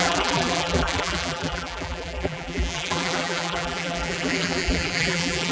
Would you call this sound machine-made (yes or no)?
yes